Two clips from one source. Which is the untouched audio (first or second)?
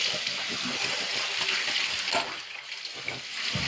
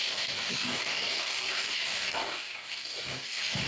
first